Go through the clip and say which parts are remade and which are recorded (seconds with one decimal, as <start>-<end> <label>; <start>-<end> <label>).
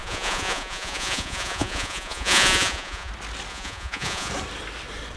0.0-3.1 remade; 3.1-3.5 recorded; 3.5-4.3 remade; 4.3-5.2 recorded